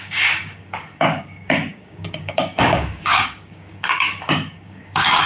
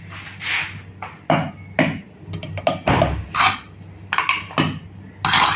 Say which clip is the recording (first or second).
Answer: second